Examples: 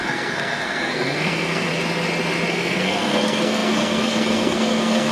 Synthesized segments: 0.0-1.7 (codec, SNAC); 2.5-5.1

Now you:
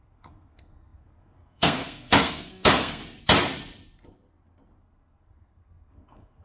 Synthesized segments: 0.0-3.0 (codec, SNAC); 4.8-6.4

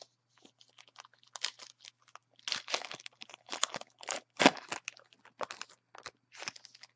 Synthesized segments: none

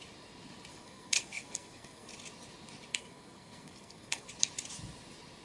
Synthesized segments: 0.7-2.1 (codec, SNAC); 2.9-4.3

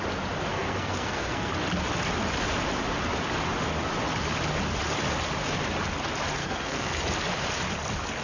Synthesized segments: 0.5-1.5 (codec, SNAC); 6.4-7.0